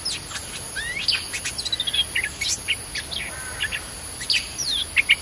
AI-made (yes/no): no